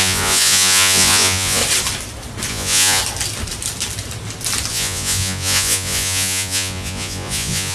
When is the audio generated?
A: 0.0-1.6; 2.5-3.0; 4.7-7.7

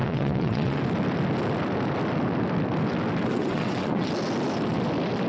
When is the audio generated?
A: 0.0-0.8; 3.3-4.1

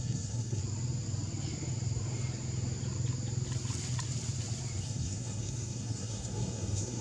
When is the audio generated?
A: 0.0-0.6; 4.8-7.0